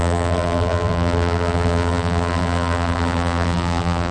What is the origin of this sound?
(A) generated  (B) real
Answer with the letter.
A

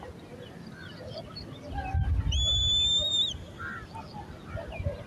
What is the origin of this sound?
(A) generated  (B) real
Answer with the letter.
B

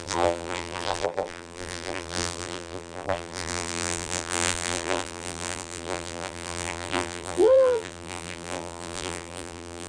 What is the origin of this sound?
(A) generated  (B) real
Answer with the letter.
A